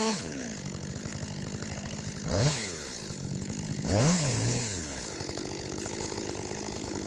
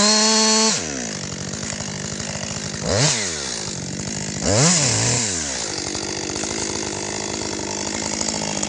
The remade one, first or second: first